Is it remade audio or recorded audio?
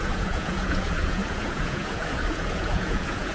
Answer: remade